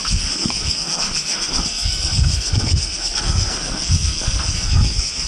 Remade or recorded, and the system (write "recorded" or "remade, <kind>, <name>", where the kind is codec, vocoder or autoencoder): remade, codec, SNAC